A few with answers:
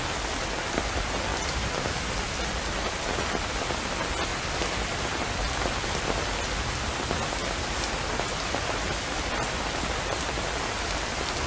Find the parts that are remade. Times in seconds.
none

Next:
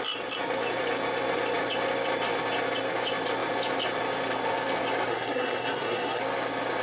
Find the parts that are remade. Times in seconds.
5.1-6.2 (codec, SNAC)

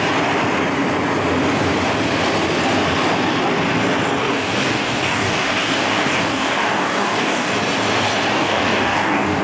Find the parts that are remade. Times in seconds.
4.2-7.5 (codec, DAC); 8.3-9.4

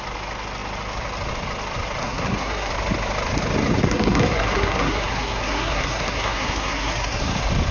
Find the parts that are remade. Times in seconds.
2.0-2.7 (codec, SNAC); 3.8-7.3

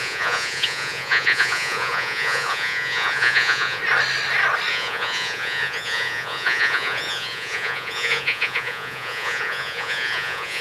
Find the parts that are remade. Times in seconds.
0.0-3.8 (vocoder, Vocos); 4.7-10.6

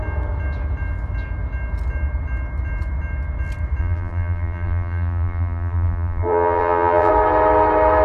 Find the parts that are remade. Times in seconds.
3.8-7.1 (vocoder, BigVGAN v2)